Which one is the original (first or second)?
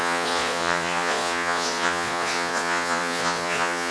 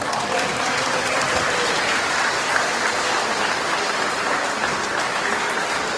second